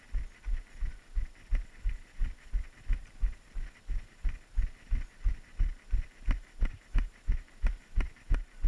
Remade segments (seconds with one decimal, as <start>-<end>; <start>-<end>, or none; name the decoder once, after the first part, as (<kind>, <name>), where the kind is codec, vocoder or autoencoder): none